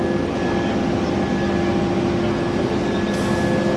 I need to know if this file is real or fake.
real